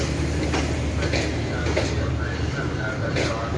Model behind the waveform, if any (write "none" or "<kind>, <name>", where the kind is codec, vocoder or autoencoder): none